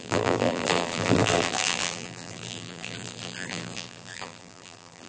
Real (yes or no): no